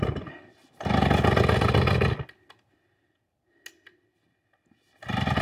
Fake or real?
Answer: real